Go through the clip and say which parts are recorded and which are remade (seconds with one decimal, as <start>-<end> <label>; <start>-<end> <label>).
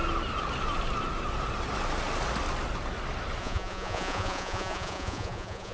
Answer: 0.0-3.4 recorded; 3.4-5.7 remade